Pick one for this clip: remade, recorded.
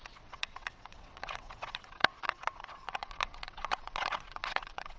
remade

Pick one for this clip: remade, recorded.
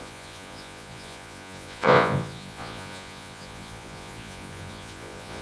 remade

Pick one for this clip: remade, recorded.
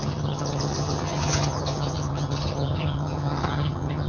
remade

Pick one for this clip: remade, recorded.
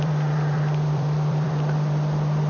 remade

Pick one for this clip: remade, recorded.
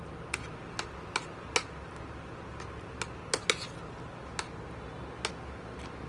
recorded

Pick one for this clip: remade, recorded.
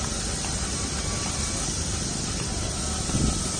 recorded